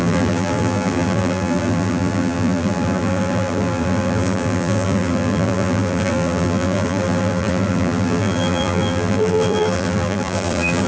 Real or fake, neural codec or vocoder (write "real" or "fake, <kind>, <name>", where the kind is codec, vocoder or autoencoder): fake, vocoder, BigVGAN v2